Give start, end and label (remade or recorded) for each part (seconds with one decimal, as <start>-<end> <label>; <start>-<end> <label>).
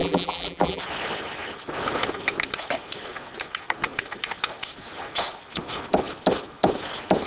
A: 0.0-0.8 remade; 0.8-7.3 recorded